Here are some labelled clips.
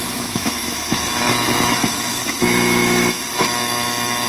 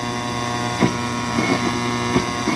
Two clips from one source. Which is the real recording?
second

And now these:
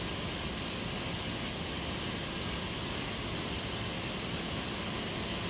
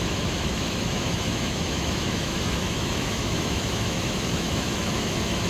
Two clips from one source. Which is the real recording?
first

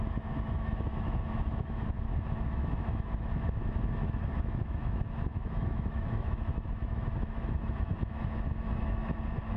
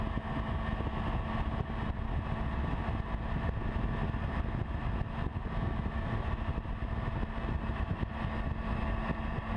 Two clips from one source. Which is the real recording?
second